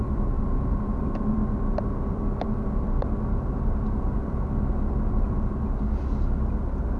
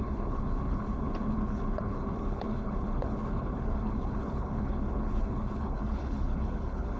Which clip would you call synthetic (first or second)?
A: second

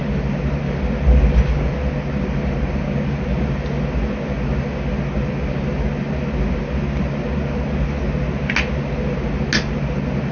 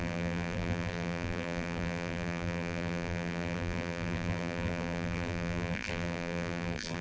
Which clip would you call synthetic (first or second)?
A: second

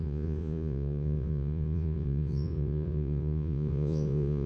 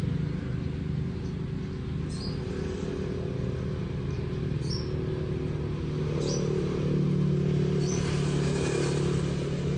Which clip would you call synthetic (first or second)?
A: first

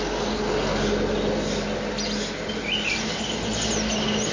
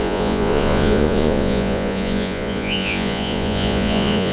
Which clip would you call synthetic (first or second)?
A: second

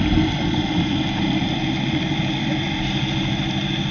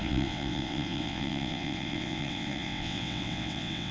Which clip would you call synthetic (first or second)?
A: second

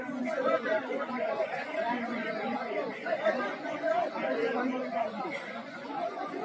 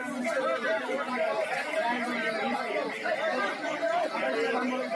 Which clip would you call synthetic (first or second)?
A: first